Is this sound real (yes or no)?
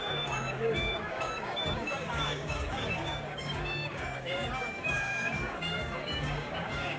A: no